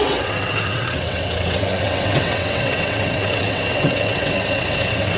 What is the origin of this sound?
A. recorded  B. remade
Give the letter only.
B